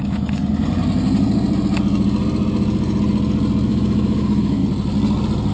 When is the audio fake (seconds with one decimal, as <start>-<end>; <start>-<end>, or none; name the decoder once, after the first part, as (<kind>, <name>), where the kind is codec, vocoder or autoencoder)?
0.0-0.4 (autoencoder, DAC-VAE); 3.7-4.6